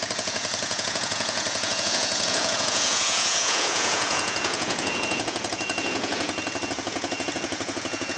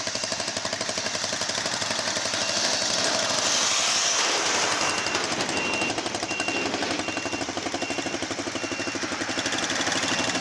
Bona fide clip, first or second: second